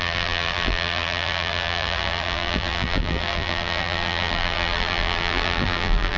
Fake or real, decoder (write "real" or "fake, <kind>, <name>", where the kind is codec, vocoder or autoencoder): fake, vocoder, BigVGAN v2